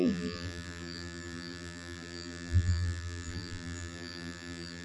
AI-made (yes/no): yes